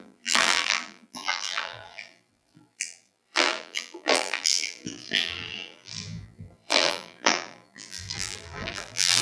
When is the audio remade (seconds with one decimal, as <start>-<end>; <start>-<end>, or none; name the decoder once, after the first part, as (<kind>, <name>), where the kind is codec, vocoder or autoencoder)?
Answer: 0.0-9.2 (vocoder, BigVGAN v2)